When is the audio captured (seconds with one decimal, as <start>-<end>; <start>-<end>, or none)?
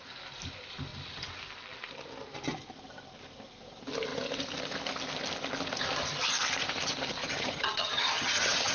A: 0.0-7.2